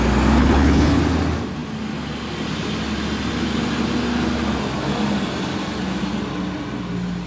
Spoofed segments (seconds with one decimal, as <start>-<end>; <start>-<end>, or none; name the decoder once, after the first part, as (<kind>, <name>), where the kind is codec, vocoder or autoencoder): 0.4-1.0 (codec, HILCodec)